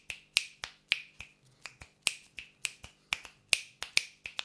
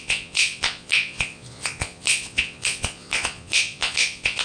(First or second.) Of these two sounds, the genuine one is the first